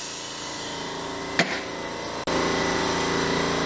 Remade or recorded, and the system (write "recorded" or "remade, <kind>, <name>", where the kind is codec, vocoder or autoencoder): recorded